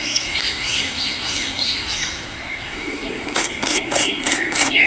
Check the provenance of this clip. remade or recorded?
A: remade